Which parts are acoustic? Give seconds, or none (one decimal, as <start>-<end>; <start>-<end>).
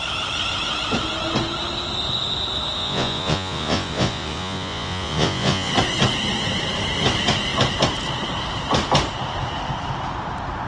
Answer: 0.0-2.8; 5.7-10.7